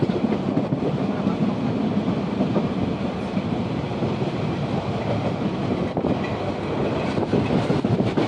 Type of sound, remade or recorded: recorded